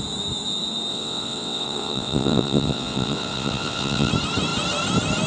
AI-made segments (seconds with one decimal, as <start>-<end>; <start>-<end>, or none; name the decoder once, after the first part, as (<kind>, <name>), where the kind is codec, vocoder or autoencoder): 0.9-4.1 (vocoder, WaveNeXt)